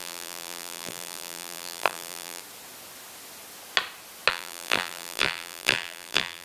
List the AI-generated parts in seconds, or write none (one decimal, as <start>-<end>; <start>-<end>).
0.0-2.4; 4.3-6.4